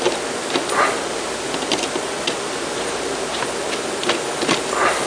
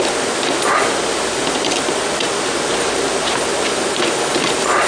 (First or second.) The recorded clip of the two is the first